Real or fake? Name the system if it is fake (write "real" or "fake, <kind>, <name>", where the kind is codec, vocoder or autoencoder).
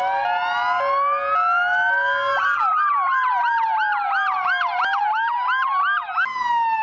real